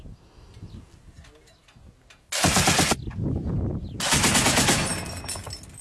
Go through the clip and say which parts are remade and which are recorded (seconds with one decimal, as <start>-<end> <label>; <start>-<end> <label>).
0.0-5.8 recorded